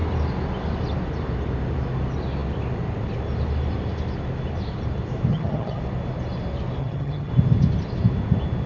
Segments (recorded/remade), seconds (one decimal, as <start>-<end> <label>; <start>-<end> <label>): 0.0-5.3 recorded; 5.3-5.8 remade; 5.8-6.8 recorded; 6.8-7.3 remade; 7.3-8.7 recorded